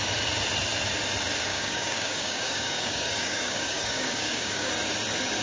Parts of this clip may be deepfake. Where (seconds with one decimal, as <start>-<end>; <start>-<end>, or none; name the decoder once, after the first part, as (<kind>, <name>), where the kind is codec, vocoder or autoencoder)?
1.5-4.7 (codec, DAC)